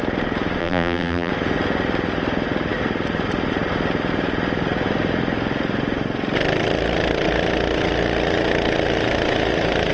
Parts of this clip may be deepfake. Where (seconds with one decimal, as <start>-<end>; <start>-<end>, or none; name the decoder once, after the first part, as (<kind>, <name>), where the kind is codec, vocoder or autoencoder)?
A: 0.6-1.3 (vocoder, BigVGAN v2)